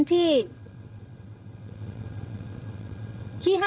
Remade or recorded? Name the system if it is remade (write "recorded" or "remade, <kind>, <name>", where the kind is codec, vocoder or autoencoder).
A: remade, vocoder, WaveNeXt